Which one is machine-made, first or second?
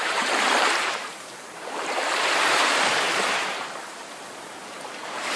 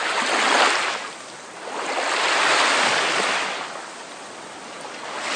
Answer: first